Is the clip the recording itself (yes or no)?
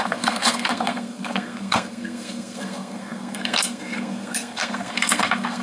no